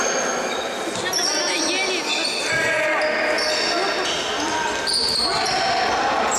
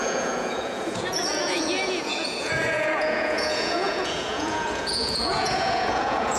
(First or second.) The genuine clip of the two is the first